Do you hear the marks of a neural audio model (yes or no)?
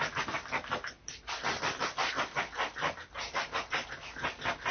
no